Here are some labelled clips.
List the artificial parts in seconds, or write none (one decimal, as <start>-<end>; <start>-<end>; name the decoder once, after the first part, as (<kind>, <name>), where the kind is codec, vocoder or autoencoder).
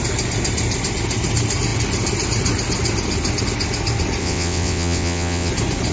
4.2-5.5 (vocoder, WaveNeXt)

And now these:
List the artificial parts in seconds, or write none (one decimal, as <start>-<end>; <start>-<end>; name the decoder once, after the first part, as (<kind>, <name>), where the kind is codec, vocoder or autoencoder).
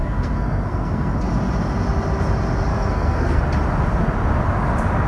0.0-1.1 (codec, SNAC); 2.7-3.4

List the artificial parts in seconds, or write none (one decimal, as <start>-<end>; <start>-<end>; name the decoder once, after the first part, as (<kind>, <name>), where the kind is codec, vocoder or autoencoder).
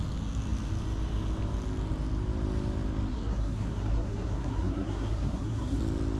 3.1-5.8 (codec, SNAC)